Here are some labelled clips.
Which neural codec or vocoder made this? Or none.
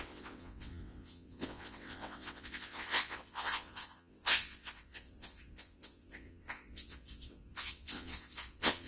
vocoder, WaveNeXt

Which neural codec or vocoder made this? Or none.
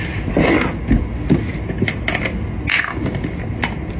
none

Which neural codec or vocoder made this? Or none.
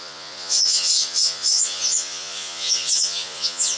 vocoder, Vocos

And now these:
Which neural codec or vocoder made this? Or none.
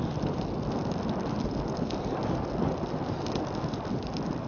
none